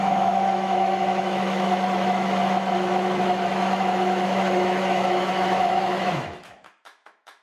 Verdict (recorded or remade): remade